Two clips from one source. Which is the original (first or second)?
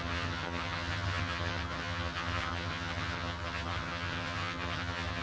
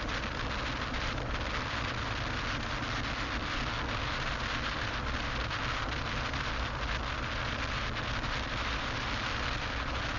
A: second